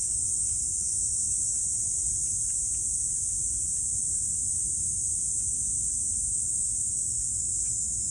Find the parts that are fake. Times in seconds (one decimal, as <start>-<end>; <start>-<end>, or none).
0.0-1.6; 6.2-8.1

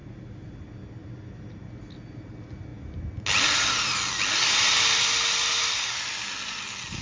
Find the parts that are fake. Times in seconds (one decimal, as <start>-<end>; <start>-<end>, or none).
none

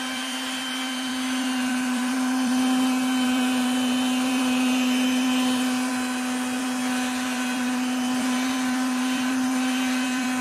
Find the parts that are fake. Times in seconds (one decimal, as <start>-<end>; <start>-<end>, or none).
0.0-5.9; 6.6-10.4

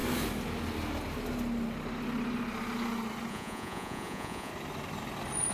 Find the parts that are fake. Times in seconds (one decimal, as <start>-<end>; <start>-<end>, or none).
3.3-4.5

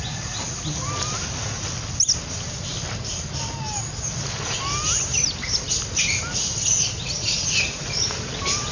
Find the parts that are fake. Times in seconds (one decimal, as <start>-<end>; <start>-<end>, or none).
none

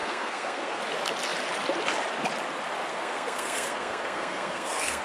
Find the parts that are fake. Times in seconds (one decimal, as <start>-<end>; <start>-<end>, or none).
0.0-0.8; 2.9-5.0

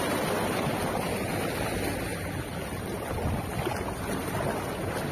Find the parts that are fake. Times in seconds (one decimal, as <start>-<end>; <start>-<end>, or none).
none